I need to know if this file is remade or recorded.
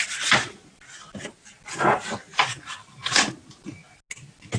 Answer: recorded